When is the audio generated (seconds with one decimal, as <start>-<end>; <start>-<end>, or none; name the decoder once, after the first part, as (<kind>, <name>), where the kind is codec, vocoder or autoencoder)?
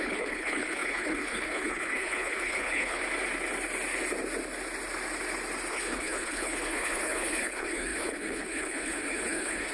0.0-3.0 (codec, HILCodec); 5.7-9.7